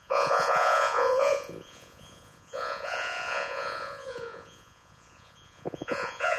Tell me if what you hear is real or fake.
fake